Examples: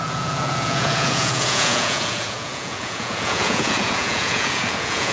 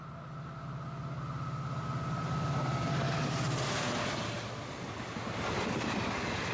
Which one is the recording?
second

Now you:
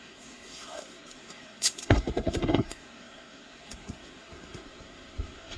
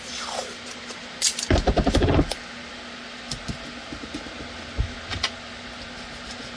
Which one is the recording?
second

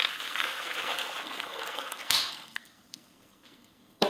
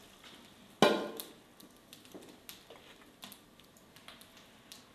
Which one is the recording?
second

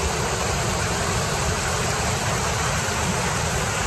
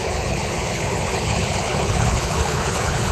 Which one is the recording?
first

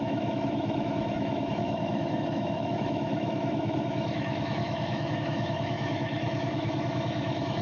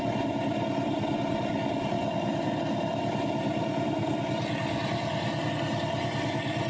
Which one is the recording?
second